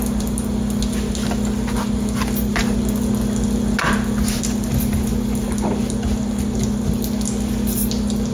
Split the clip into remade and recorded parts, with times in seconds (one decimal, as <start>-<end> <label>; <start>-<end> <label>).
0.0-8.3 recorded